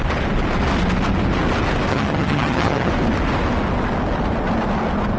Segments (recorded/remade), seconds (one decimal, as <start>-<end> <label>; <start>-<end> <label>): 0.0-1.9 recorded; 1.9-2.9 remade; 2.9-5.2 recorded

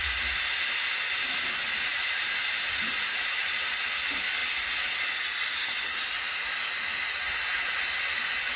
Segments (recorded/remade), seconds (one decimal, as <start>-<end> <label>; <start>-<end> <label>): 0.0-1.9 recorded; 1.9-3.7 remade; 3.7-8.6 recorded

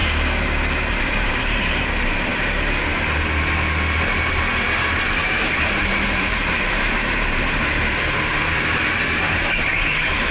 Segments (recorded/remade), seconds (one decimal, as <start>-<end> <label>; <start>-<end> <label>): 0.0-0.9 recorded; 0.9-2.3 remade; 2.3-5.2 recorded; 5.2-10.3 remade

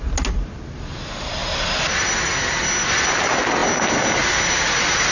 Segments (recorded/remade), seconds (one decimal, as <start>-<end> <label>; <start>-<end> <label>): 0.0-5.1 recorded

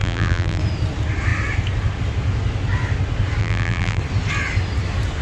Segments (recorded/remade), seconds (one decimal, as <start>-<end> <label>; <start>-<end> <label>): 0.0-0.6 remade; 0.6-3.4 recorded; 3.4-4.0 remade; 4.0-5.2 recorded

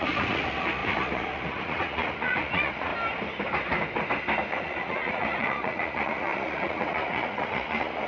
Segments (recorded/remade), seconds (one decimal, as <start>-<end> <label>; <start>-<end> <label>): 0.0-2.9 remade; 2.9-4.5 recorded; 4.5-8.1 remade